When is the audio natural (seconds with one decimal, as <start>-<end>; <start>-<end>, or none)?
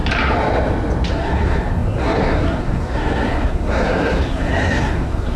0.0-1.1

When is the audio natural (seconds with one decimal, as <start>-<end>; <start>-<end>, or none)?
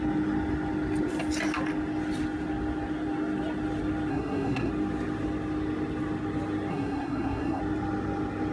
0.0-4.1; 4.7-6.7; 7.6-8.5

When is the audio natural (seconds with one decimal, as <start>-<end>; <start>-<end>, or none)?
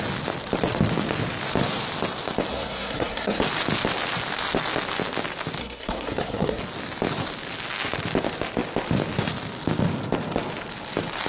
0.0-2.5; 3.4-5.6; 6.6-11.3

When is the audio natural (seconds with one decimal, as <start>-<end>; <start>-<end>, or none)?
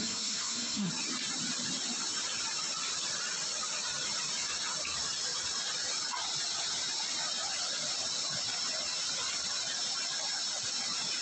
0.9-11.2